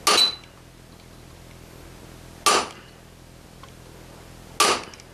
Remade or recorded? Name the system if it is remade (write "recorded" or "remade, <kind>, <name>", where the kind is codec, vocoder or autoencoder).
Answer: recorded